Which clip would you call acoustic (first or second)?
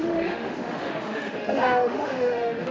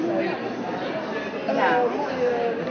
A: second